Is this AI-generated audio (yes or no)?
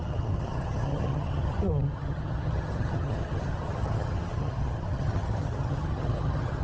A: yes